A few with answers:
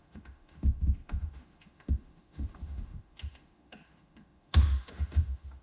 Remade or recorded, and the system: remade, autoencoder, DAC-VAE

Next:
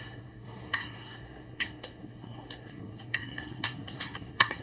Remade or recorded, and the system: remade, codec, SNAC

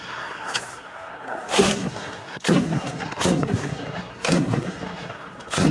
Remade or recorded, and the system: remade, codec, SNAC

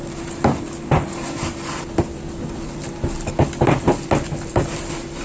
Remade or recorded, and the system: recorded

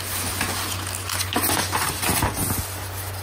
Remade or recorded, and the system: recorded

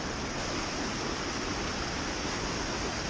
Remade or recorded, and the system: recorded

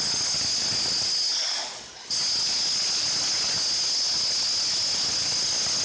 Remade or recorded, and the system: recorded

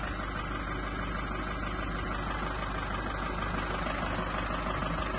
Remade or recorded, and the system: recorded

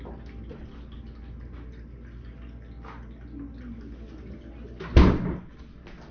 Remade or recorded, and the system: recorded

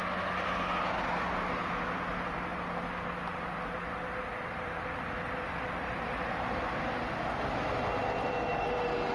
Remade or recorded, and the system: recorded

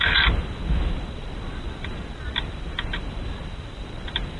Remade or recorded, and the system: recorded